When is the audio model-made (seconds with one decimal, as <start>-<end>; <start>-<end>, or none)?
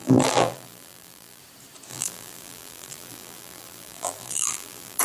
0.0-1.4; 1.9-5.0